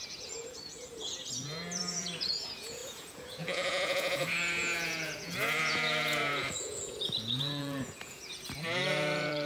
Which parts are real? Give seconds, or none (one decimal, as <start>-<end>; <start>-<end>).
none